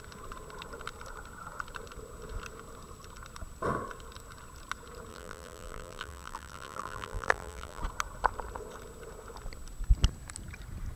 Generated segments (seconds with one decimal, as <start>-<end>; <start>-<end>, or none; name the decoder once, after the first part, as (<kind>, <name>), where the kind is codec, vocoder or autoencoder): 5.1-7.8 (vocoder, BigVGAN v2)